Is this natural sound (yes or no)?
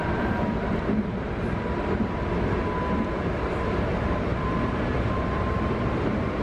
no